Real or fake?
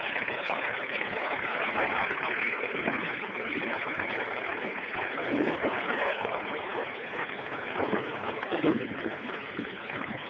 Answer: fake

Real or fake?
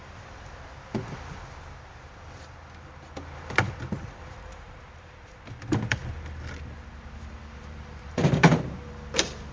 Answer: fake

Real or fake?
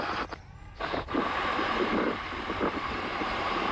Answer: fake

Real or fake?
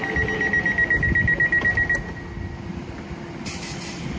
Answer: real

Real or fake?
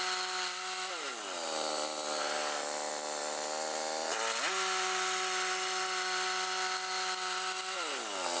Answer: real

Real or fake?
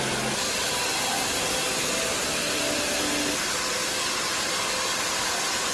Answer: real